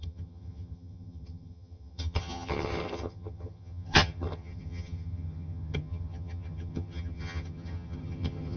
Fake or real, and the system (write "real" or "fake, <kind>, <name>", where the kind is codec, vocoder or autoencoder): fake, vocoder, HiFi-GAN